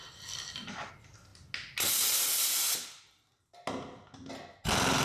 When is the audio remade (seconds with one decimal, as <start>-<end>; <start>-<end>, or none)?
0.0-0.9